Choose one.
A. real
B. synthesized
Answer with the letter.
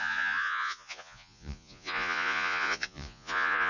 B